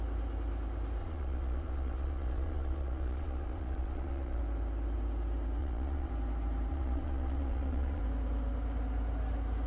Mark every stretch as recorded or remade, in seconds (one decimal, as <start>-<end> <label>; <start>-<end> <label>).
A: 0.0-1.0 recorded; 1.0-4.4 remade; 4.4-5.6 recorded; 5.6-6.1 remade; 6.1-6.7 recorded; 6.7-8.0 remade; 8.0-9.7 recorded